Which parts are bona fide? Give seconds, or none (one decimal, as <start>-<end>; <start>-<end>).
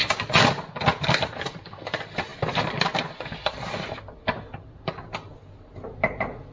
0.0-1.2